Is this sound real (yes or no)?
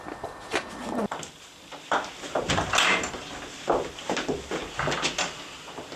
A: yes